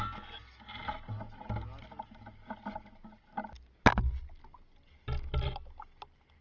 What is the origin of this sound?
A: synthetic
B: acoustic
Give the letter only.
B